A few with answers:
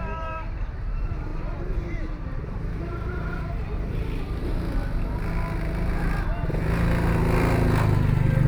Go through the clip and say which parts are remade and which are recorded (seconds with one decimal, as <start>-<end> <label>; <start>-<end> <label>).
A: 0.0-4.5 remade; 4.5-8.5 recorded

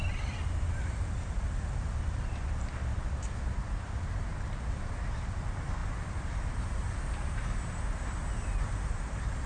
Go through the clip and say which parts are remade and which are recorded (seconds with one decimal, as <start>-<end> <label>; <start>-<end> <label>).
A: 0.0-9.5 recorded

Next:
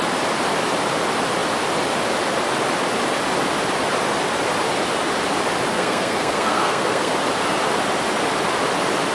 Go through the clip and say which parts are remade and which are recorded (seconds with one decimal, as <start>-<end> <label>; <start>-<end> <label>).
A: 0.0-5.7 recorded; 5.7-7.1 remade; 7.1-9.1 recorded

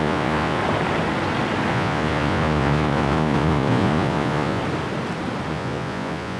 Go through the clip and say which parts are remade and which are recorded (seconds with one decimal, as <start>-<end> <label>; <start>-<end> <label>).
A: 0.0-0.6 remade; 0.6-1.7 recorded; 1.7-4.6 remade; 4.6-5.5 recorded; 5.5-6.4 remade